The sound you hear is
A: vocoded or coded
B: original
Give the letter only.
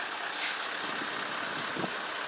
B